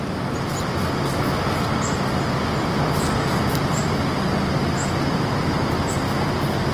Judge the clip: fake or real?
real